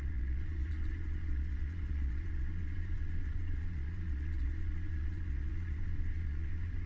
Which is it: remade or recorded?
remade